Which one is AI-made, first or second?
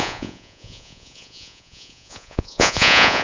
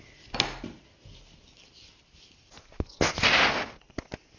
first